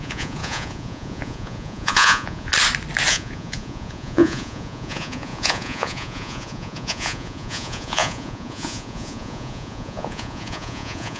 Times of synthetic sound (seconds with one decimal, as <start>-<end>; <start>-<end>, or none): 0.0-2.5; 3.1-11.2